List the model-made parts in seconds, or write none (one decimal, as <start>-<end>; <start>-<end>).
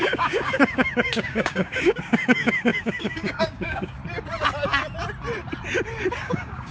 0.0-4.0; 6.2-6.7